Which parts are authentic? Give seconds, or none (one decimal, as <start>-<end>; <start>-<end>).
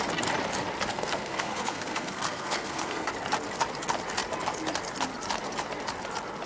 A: 0.0-0.9; 3.1-6.5